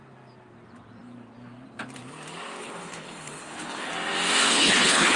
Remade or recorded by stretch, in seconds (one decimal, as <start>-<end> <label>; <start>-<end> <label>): 0.0-2.6 recorded; 2.6-3.9 remade; 3.9-4.5 recorded; 4.5-5.2 remade